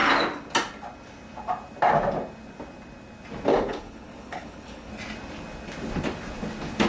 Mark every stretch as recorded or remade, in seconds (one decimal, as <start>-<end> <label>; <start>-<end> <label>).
0.0-3.5 recorded; 3.5-4.9 remade; 4.9-6.9 recorded